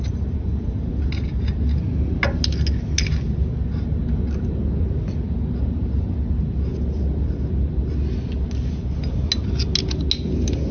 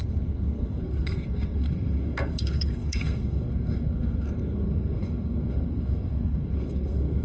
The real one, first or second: first